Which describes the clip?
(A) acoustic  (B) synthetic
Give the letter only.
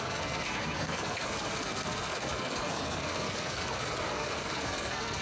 B